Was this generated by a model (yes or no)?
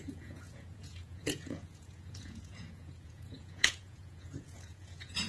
yes